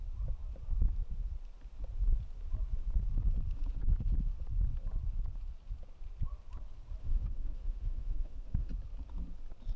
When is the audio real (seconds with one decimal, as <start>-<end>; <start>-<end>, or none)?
0.0-7.0; 8.7-9.8